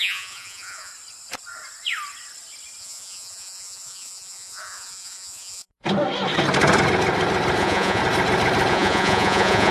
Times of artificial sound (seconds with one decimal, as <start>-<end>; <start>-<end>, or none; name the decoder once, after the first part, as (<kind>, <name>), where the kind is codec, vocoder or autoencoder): 0.0-0.9 (vocoder, Vocos); 2.8-5.7; 7.6-8.0; 8.7-9.7